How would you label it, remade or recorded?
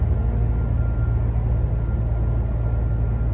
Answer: recorded